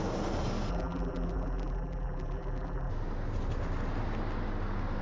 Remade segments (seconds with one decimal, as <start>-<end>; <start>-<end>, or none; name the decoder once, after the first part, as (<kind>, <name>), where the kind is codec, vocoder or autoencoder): 0.7-2.9 (vocoder, BigVGAN v2)

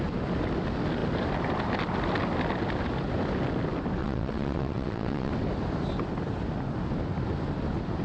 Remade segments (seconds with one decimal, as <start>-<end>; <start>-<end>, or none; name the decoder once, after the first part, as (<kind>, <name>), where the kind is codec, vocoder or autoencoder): 4.0-5.3 (vocoder, WaveNeXt)

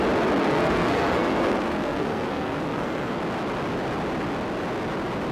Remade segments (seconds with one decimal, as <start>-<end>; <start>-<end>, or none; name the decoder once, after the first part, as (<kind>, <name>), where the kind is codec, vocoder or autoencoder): 0.4-3.2 (codec, SNAC)